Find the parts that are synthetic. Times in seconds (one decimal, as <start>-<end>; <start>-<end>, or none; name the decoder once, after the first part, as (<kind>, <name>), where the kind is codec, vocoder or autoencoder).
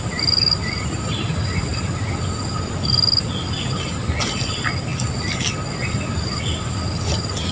none